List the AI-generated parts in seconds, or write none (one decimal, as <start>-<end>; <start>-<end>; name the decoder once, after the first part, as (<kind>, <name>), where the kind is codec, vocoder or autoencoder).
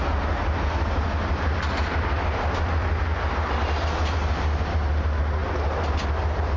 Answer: none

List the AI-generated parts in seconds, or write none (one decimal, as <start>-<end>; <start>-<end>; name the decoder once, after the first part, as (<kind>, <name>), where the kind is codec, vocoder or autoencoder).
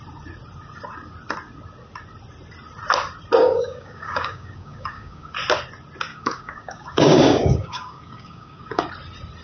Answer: 3.4-5.3 (codec, DAC); 6.1-8.9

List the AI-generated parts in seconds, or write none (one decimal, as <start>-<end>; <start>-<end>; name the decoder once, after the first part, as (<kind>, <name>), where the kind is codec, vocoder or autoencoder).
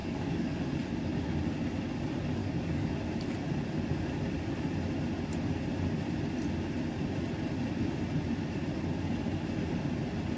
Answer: 0.0-0.6 (codec, DAC); 2.4-2.9